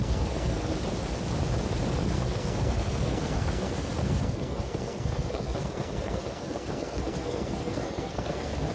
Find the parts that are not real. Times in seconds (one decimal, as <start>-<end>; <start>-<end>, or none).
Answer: 0.0-0.7; 2.0-8.7